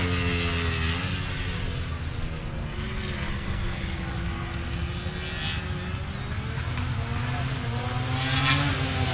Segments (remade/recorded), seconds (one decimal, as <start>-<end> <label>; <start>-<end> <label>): 0.0-3.3 recorded; 3.3-4.0 remade; 4.0-9.1 recorded